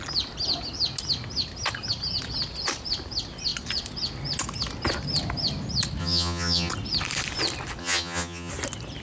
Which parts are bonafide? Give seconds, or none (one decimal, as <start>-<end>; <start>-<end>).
0.0-6.0; 6.7-7.8; 8.5-9.0